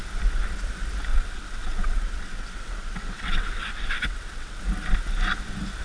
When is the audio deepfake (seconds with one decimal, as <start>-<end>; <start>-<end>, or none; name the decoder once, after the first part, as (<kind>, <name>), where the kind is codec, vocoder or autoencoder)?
1.1-4.6 (vocoder, WaveNeXt)